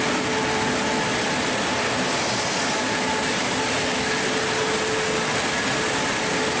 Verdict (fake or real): real